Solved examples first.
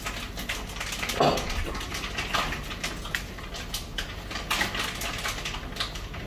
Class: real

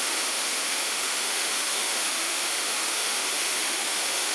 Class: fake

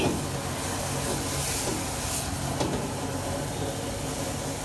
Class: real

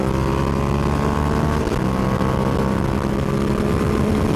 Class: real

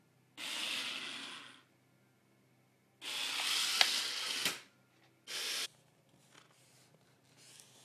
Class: real